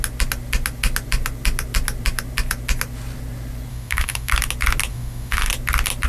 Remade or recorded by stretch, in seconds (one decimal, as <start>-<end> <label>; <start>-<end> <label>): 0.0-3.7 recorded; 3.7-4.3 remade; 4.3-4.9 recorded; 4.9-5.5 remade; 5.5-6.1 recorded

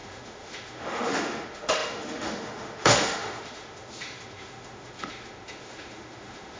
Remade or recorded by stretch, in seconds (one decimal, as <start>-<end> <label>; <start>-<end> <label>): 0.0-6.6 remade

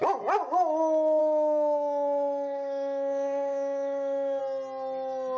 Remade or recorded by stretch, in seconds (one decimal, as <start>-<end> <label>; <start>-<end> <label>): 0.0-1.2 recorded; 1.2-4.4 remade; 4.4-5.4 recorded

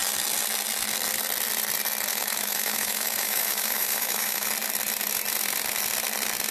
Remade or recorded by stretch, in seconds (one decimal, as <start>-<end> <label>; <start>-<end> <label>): 0.0-2.1 recorded; 2.1-4.5 remade; 4.5-6.5 recorded